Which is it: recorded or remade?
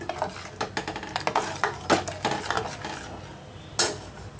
recorded